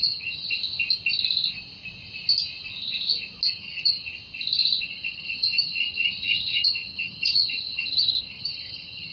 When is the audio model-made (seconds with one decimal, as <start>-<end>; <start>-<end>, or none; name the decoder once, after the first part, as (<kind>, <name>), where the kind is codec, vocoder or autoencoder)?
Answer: 0.0-0.6 (vocoder, HiFi-GAN); 3.5-4.1; 4.8-9.1